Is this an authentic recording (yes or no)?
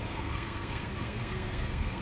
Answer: no